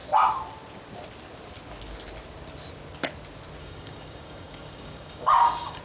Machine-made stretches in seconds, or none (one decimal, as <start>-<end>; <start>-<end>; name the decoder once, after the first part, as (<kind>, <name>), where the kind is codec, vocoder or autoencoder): 3.6-5.8 (codec, DAC)